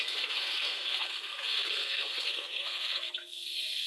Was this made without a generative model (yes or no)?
no